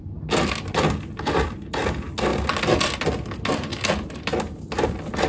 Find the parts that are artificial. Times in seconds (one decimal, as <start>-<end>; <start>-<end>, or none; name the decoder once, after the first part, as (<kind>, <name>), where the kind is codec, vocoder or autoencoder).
none